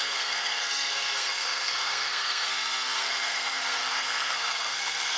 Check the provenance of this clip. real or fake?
fake